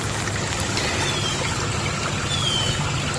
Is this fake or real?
real